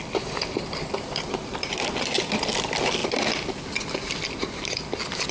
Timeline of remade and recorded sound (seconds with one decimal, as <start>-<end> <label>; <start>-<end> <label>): 0.0-3.0 recorded; 3.0-3.6 remade; 3.6-5.3 recorded